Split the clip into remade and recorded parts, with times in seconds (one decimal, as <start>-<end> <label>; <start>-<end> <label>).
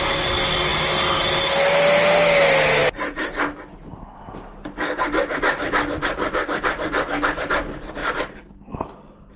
0.0-2.8 recorded; 2.8-3.4 remade; 3.4-9.4 recorded